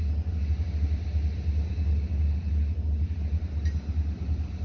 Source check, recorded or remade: recorded